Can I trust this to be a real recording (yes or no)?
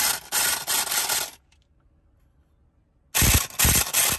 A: yes